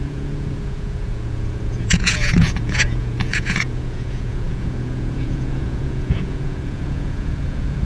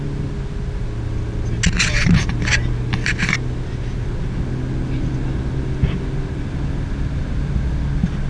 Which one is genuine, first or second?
second